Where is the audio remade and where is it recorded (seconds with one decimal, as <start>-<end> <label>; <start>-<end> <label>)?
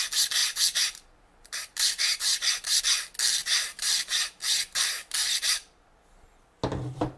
0.0-0.4 recorded; 0.4-2.8 remade; 2.8-3.4 recorded; 3.4-5.9 remade; 5.9-7.2 recorded